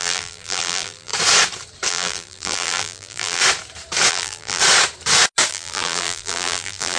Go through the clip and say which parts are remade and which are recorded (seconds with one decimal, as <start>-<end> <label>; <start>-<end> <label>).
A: 0.0-1.1 remade; 1.1-1.9 recorded; 1.9-3.4 remade; 3.4-4.1 recorded; 4.1-4.6 remade; 4.6-5.5 recorded; 5.5-7.0 remade